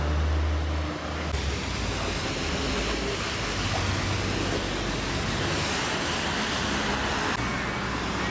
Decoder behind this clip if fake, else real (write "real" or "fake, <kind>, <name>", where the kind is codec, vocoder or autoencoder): real